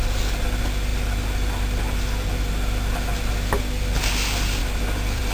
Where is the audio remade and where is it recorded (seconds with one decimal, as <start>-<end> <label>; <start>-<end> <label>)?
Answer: 0.0-4.6 recorded; 4.6-5.3 remade